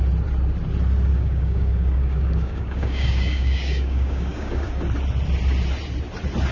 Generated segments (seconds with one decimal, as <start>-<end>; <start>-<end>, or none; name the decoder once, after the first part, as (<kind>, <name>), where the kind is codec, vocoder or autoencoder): 1.1-4.7 (codec, DAC)